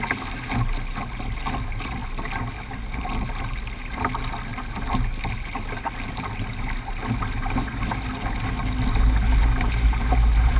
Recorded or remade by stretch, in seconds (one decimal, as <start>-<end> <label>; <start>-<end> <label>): 0.0-10.6 recorded